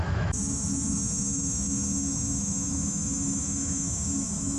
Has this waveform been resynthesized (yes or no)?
yes